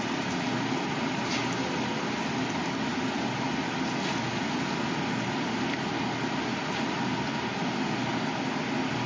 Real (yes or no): yes